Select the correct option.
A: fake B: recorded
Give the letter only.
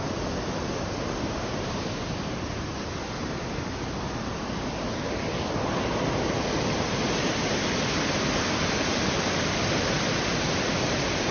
B